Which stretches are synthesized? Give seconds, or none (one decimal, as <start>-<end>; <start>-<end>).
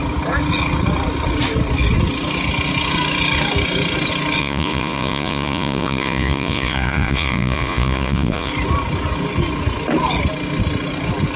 4.4-8.5